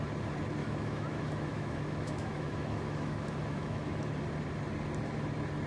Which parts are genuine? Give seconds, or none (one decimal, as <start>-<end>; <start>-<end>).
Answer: 0.0-0.6; 4.0-5.7